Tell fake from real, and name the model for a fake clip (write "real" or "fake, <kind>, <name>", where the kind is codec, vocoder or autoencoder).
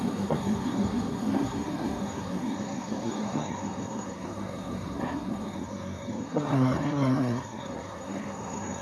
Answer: fake, codec, SNAC